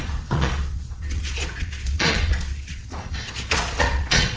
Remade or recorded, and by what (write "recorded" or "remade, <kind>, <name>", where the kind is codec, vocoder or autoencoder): remade, vocoder, Vocos